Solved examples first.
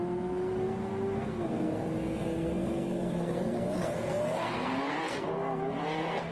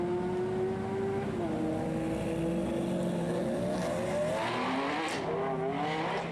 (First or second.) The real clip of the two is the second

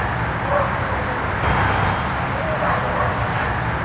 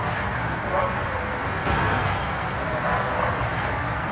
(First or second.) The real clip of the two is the first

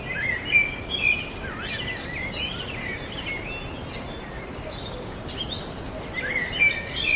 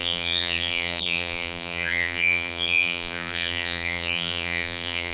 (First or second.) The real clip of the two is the first